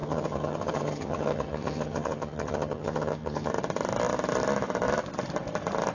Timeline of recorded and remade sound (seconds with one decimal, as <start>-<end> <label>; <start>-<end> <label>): 0.0-3.5 remade; 3.5-5.9 recorded